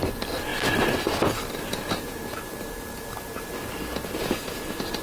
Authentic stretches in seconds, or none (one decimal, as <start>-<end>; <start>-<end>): 0.0-5.0

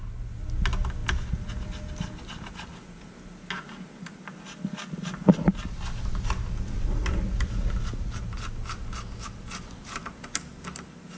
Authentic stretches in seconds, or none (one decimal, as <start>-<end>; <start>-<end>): 0.0-11.2